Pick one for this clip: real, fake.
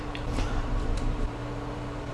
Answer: fake